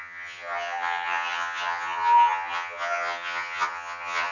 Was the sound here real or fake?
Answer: fake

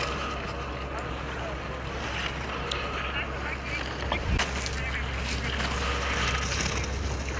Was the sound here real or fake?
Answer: real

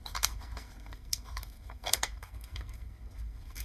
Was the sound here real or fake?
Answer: fake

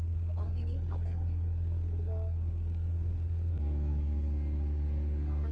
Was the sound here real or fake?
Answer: fake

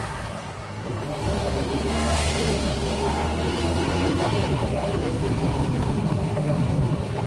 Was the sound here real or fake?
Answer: fake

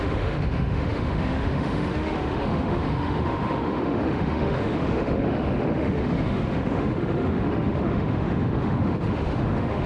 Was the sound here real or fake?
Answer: fake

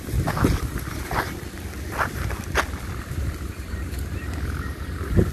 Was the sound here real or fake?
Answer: real